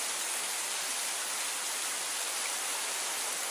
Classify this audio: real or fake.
real